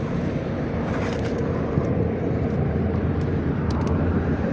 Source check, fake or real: fake